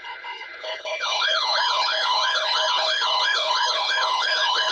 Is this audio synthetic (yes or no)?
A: yes